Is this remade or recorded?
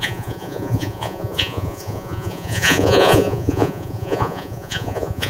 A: remade